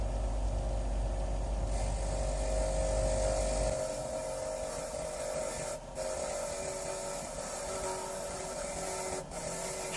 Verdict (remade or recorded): recorded